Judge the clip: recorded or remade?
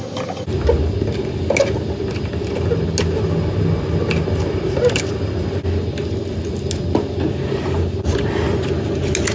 recorded